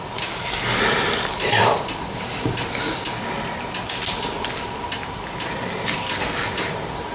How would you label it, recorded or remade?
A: recorded